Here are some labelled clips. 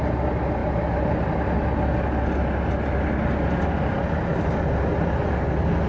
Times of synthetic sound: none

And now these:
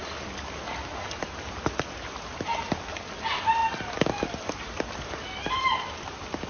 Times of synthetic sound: none

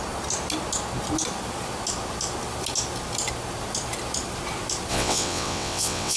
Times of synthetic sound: 4.9-6.2 (vocoder, WaveNeXt)

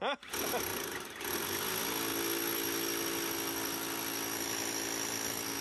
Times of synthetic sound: 0.7-1.6 (vocoder, BigVGAN v2)

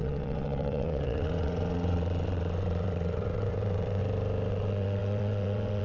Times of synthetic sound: 0.0-4.0 (vocoder, WaveNeXt); 4.5-5.8

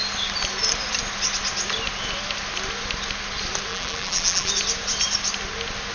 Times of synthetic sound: 3.7-4.5 (vocoder, BigVGAN v2)

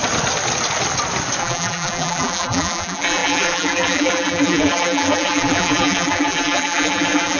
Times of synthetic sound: 1.4-7.4 (vocoder, BigVGAN v2)

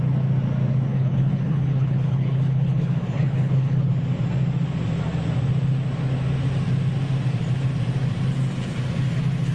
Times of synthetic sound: 0.9-3.9 (codec, HILCodec)